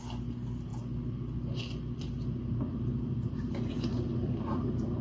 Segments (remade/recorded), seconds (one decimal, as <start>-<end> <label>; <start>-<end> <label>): 0.0-5.0 recorded